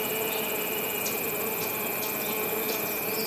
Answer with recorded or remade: recorded